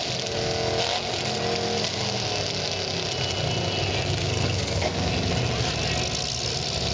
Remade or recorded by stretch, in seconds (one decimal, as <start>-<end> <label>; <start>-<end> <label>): 0.0-4.2 recorded; 4.2-5.1 remade; 5.1-6.9 recorded